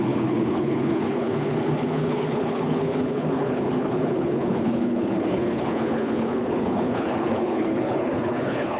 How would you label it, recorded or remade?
remade